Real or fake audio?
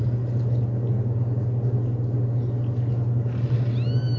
real